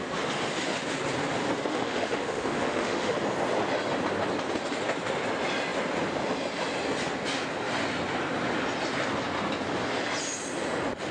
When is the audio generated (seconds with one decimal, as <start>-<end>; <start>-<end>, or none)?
1.7-3.2